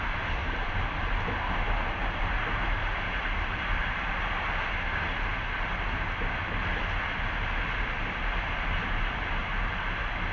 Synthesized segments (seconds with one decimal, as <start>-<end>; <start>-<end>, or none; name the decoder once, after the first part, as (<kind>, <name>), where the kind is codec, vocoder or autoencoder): none